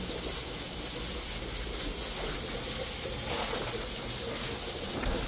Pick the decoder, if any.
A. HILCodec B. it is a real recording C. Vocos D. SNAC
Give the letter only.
B